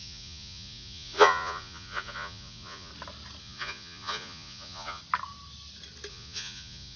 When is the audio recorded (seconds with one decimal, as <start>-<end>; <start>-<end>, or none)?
2.9-3.4; 5.0-6.1